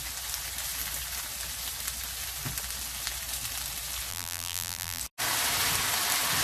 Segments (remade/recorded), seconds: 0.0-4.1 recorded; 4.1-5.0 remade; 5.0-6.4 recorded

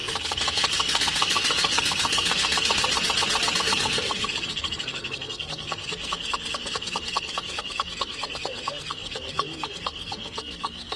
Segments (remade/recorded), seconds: 0.0-2.8 remade; 2.8-3.6 recorded; 3.6-11.0 remade